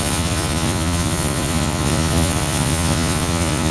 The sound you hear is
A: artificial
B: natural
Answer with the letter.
A